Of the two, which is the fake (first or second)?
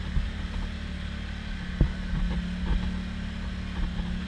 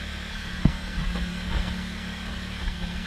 second